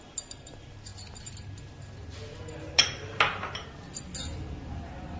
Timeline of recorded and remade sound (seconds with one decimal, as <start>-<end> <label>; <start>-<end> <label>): 0.0-5.2 recorded